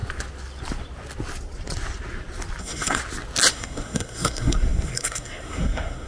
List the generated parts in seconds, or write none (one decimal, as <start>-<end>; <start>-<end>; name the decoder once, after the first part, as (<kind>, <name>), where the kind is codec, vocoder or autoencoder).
2.6-3.0 (codec, SNAC); 3.5-6.1